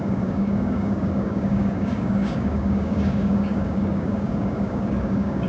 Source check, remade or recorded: remade